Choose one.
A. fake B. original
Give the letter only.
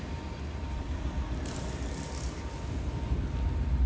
B